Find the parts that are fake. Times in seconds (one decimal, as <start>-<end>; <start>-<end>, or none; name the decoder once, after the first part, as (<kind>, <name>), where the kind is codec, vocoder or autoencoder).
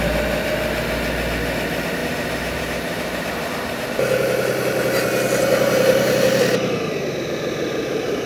2.0-3.9 (vocoder, BigVGAN v2)